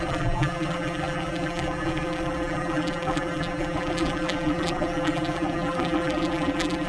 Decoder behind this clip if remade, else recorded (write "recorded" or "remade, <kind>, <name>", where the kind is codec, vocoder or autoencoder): remade, vocoder, BigVGAN v2